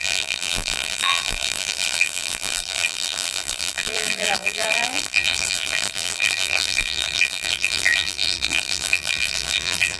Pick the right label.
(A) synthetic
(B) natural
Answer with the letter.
A